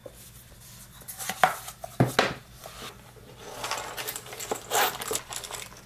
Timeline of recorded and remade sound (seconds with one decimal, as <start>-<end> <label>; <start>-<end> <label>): 0.0-5.9 recorded